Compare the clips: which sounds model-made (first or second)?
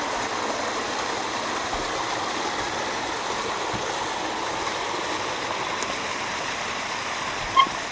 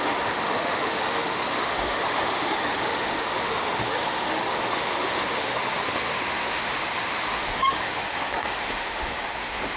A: second